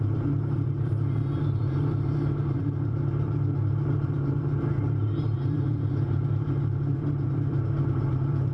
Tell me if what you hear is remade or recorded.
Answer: remade